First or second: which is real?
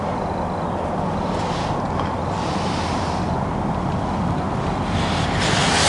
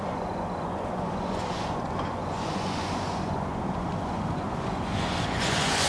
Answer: first